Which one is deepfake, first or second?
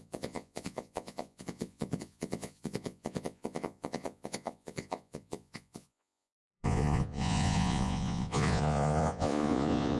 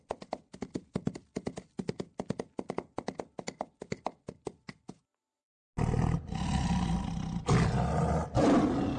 first